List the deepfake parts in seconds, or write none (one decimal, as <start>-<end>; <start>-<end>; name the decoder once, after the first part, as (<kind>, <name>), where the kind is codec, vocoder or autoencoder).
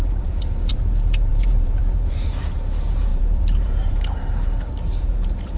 0.0-5.6 (vocoder, BigVGAN v2)